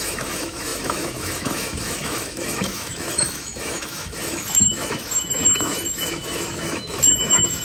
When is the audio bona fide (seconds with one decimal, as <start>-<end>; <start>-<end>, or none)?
none

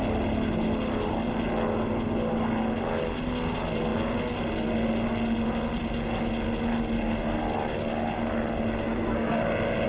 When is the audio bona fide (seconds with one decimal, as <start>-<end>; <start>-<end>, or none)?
0.0-8.8; 9.4-9.9